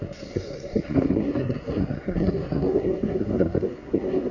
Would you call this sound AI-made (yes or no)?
yes